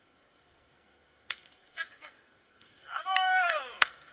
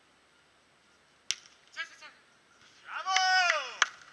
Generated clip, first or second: first